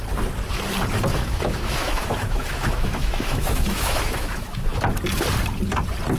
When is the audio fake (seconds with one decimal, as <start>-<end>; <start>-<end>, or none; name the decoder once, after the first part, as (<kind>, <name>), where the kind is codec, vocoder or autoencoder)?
1.1-4.8 (autoencoder, DAC-VAE)